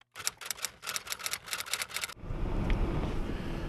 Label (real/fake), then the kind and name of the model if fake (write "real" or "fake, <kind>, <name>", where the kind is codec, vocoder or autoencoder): real